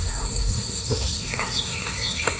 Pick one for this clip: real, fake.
fake